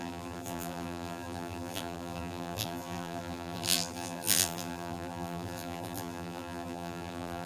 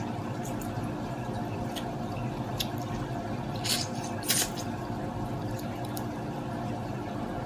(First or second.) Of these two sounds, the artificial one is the first